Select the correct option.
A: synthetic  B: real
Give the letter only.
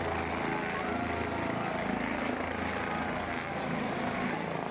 B